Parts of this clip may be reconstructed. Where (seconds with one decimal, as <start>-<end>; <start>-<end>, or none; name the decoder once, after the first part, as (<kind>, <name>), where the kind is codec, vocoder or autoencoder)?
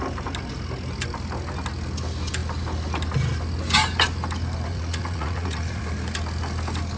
4.7-5.8 (vocoder, Vocos)